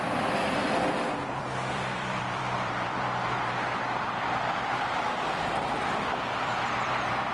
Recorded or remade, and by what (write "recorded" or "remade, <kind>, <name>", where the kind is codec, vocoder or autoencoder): remade, vocoder, BigVGAN v2